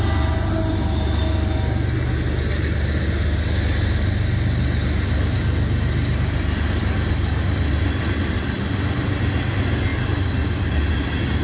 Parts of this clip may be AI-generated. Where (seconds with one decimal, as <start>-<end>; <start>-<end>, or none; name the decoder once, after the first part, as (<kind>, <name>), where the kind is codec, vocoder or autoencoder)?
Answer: none